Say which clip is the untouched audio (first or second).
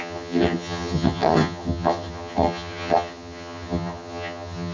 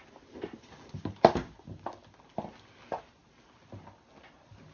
second